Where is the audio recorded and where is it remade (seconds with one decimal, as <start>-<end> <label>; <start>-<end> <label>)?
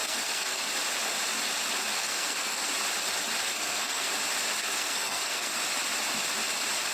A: 0.0-0.6 remade; 0.6-2.0 recorded; 2.0-2.7 remade; 2.7-3.4 recorded; 3.4-4.1 remade; 4.1-4.6 recorded; 4.6-5.6 remade; 5.6-6.9 recorded